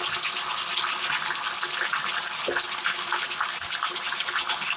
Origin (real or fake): real